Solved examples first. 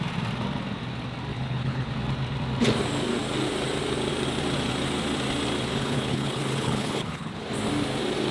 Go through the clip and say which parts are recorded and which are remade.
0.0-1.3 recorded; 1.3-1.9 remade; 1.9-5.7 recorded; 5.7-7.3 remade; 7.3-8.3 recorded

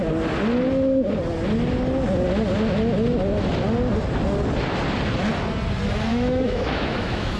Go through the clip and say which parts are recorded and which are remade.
0.0-6.1 recorded; 6.1-7.4 remade

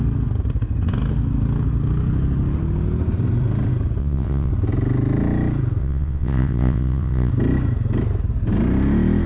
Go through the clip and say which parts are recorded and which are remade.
0.0-4.0 recorded; 4.0-4.5 remade; 4.5-5.8 recorded; 5.8-7.3 remade; 7.3-9.3 recorded

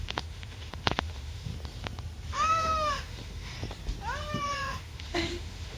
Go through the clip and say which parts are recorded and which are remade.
0.0-1.5 remade; 1.5-2.3 recorded; 2.3-3.5 remade; 3.5-4.4 recorded; 4.4-5.8 remade

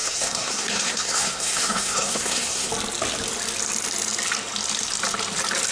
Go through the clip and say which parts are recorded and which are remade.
0.0-2.7 remade; 2.7-5.7 recorded

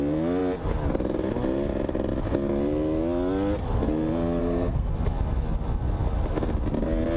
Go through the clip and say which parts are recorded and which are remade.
0.0-4.4 recorded; 4.4-4.9 remade; 4.9-7.2 recorded